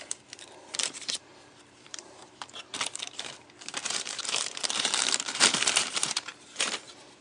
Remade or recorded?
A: remade